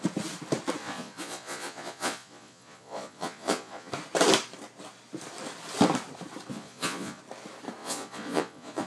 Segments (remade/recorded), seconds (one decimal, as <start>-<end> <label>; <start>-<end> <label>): 0.0-0.8 recorded; 0.8-3.9 remade; 3.9-6.5 recorded; 6.5-7.2 remade; 7.2-7.8 recorded; 7.8-8.9 remade